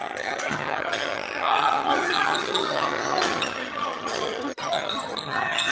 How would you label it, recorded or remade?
remade